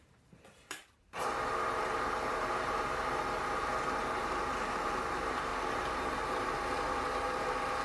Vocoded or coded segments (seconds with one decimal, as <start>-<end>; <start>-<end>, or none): 0.0-5.5; 6.2-7.8